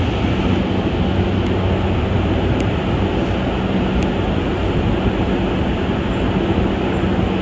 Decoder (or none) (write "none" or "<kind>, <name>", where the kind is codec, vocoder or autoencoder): none